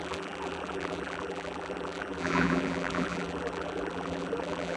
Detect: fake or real fake